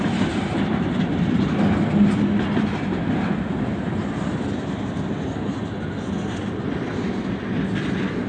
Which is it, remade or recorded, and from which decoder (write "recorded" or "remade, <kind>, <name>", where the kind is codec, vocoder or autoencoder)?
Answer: recorded